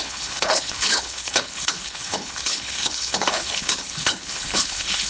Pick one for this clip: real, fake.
fake